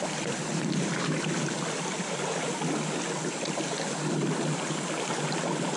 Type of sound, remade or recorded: recorded